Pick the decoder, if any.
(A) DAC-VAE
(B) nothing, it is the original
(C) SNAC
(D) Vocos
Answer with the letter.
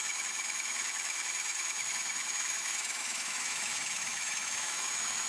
A